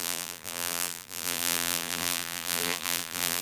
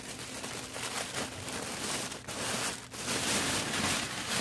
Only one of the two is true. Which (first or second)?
second